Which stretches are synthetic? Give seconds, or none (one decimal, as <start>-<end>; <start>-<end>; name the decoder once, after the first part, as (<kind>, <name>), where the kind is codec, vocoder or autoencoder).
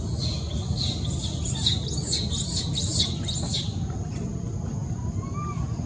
none